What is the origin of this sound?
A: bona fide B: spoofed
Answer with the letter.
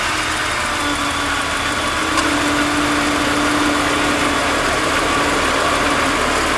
A